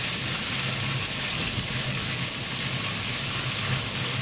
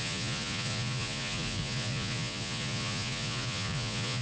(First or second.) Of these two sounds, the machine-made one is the second